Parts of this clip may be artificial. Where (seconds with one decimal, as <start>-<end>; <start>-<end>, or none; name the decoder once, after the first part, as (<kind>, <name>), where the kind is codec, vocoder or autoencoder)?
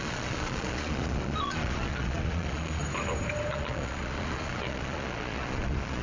0.0-2.8 (vocoder, Vocos); 3.5-6.0